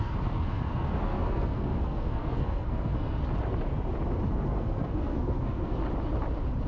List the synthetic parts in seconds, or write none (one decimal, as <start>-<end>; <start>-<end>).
0.0-3.2; 4.3-5.8